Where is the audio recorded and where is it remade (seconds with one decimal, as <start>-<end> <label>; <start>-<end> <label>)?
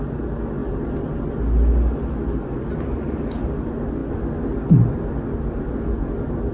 0.0-6.5 recorded